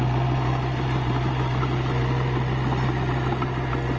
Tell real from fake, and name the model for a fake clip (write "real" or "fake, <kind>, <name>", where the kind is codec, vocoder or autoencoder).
real